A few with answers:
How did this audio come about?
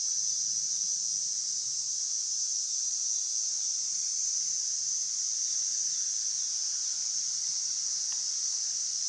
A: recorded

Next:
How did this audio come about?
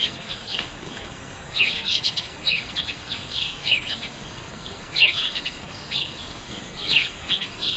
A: remade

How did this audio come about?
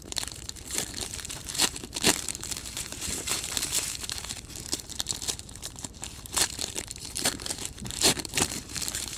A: remade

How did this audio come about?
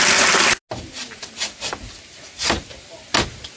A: recorded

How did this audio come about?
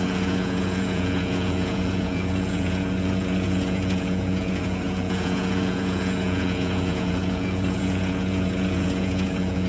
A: remade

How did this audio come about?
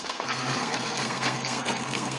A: remade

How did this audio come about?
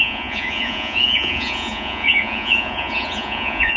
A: remade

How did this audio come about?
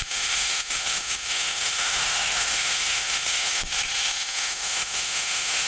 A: remade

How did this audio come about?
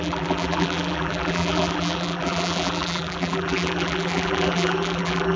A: remade